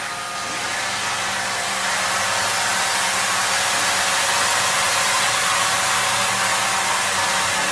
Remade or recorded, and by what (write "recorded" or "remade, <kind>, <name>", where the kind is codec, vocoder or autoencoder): recorded